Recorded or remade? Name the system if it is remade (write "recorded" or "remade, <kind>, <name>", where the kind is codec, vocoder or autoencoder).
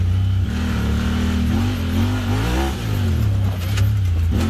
recorded